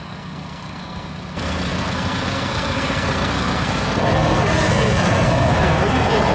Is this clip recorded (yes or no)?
no